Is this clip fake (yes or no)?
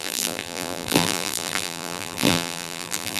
yes